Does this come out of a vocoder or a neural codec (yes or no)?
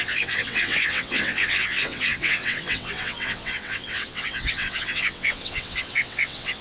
yes